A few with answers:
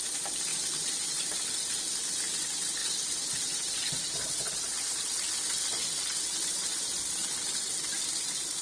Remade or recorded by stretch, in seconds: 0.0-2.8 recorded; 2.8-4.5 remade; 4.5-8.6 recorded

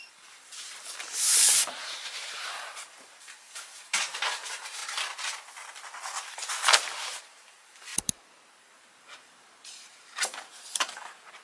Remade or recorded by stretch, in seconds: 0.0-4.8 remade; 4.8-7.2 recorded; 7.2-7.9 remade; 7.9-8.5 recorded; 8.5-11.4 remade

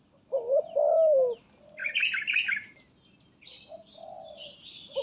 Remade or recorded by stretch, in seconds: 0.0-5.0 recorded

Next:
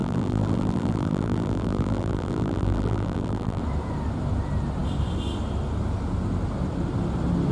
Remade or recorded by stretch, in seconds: 0.0-3.6 remade; 3.6-7.5 recorded

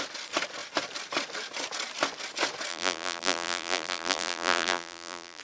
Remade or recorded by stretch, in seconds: 0.0-2.7 recorded; 2.7-5.4 remade

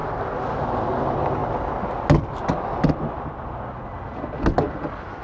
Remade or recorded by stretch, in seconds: 0.0-5.2 recorded